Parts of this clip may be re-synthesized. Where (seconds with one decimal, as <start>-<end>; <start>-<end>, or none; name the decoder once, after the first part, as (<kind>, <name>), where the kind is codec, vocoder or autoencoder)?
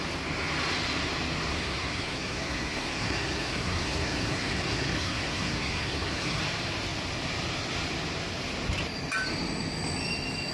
1.5-6.4 (codec, SNAC)